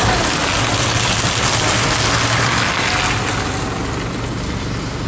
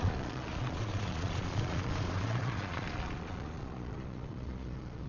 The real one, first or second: first